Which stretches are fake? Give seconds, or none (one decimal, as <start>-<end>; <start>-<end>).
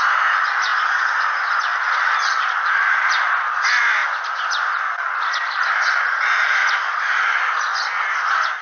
1.7-3.5; 4.0-7.3